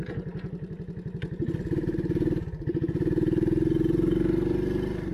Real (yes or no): no